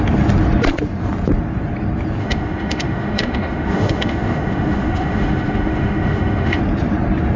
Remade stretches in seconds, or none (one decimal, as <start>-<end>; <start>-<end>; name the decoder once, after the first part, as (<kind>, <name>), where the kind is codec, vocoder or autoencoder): 2.2-6.6 (autoencoder, DAC-VAE)